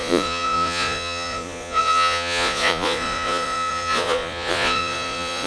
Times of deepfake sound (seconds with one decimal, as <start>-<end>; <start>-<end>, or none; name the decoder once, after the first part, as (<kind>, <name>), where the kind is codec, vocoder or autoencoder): 0.0-5.5 (vocoder, Vocos)